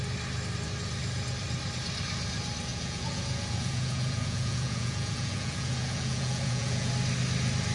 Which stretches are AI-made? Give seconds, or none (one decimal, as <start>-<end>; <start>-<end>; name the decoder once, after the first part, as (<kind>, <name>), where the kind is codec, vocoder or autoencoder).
2.7-6.9 (vocoder, Vocos)